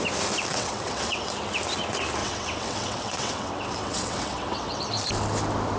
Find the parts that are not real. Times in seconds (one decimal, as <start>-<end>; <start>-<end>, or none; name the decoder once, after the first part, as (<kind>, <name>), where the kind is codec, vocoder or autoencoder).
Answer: 0.5-1.3 (vocoder, WaveNeXt); 2.2-4.8